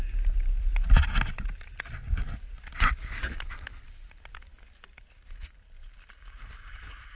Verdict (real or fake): real